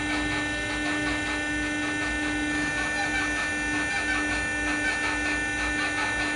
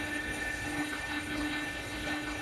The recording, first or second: first